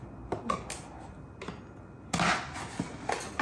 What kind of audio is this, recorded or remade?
recorded